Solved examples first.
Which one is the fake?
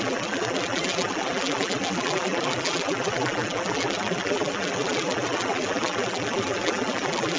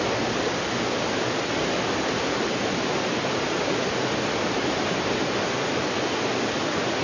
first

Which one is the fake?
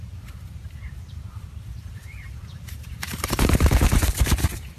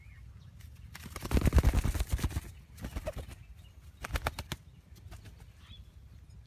first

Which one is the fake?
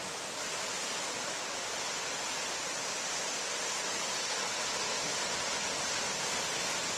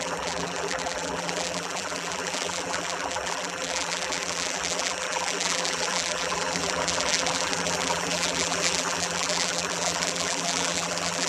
second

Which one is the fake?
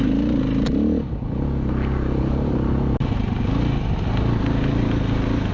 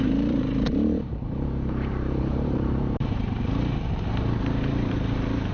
second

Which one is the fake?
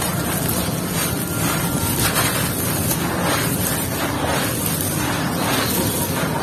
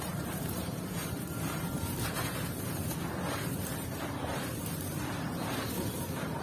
second